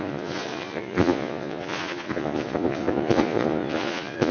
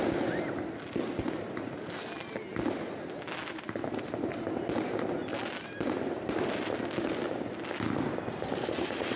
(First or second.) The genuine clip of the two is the second